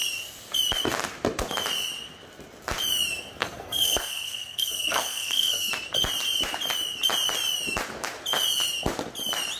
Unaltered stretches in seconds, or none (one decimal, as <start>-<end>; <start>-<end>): 0.0-3.4; 5.7-9.6